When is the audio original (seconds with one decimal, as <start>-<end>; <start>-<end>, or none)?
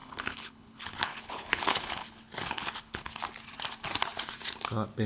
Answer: 3.1-5.1